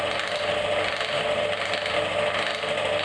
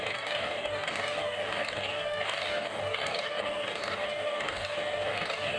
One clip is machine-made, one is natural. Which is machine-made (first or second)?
second